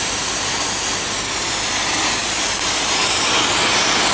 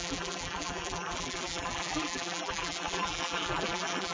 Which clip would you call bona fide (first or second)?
first